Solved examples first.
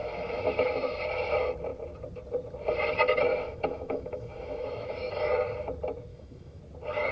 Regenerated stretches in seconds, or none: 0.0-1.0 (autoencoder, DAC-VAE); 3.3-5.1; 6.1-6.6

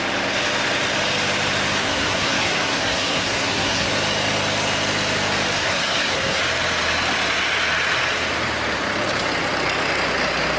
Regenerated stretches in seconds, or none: 1.8-3.9 (codec, SNAC); 5.6-6.4

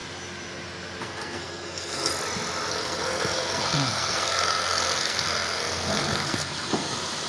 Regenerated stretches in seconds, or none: 1.0-2.1 (codec, SNAC); 2.7-7.3

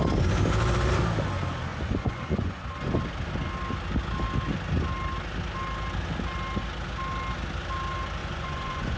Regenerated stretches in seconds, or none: 1.7-2.6 (vocoder, Vocos); 8.2-9.0